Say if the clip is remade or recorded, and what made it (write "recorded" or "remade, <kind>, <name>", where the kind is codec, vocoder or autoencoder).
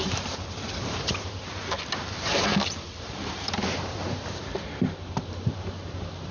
remade, vocoder, BigVGAN v2